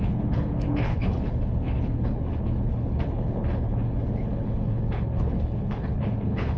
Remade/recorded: remade